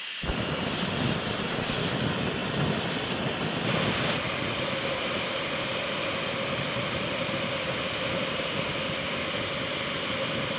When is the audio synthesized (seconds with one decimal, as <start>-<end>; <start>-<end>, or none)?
none